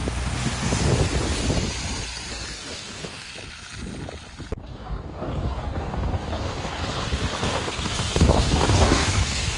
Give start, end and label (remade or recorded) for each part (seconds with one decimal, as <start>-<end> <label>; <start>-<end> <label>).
0.0-2.3 recorded; 2.3-3.3 remade; 3.3-4.6 recorded; 4.6-6.8 remade; 6.8-7.4 recorded; 7.4-9.6 remade